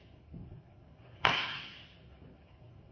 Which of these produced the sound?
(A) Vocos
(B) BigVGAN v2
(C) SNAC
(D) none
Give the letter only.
C